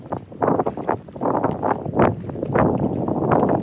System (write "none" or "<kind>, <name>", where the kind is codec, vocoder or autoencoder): none